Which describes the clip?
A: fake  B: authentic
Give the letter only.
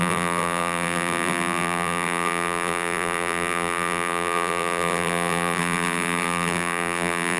A